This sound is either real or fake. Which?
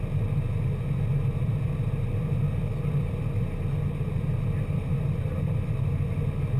real